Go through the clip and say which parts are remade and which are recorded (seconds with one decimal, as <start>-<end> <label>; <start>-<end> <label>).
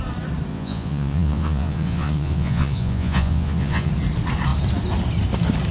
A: 0.0-0.5 recorded; 0.5-3.9 remade; 3.9-5.7 recorded